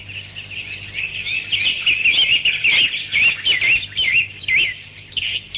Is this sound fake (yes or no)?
no